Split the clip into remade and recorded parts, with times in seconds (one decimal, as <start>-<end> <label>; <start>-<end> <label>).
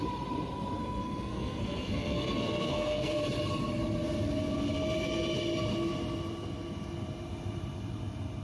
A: 0.0-0.8 recorded; 0.8-3.2 remade; 3.2-8.4 recorded